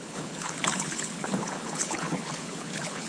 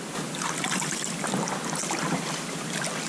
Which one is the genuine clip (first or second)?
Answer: second